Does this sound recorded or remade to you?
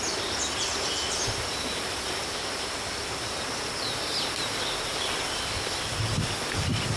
recorded